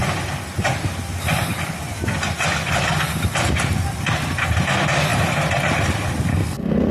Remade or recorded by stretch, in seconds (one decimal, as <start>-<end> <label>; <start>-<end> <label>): 0.0-6.3 recorded; 6.3-6.9 remade